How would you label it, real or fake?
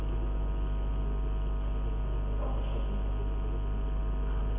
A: real